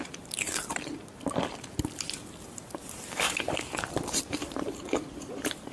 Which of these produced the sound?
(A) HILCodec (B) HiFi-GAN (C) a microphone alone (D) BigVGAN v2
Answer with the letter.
D